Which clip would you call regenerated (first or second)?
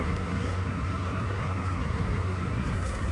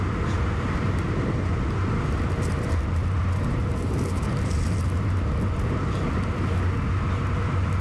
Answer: first